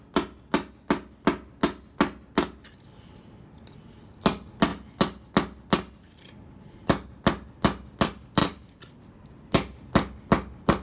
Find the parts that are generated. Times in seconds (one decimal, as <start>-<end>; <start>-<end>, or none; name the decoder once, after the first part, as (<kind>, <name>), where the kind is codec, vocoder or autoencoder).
8.4-9.0 (vocoder, BigVGAN v2)